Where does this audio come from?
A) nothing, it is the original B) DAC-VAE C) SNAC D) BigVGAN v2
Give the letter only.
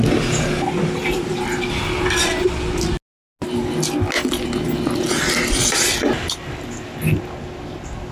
A